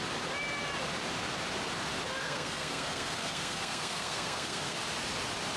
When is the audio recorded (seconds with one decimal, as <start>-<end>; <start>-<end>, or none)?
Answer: 0.0-2.2; 4.8-5.6